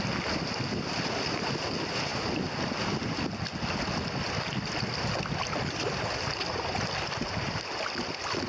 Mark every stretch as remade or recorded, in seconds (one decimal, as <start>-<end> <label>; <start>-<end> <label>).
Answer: 0.0-8.5 recorded